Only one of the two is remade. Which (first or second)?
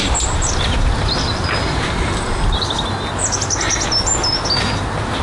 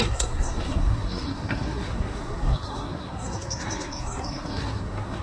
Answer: second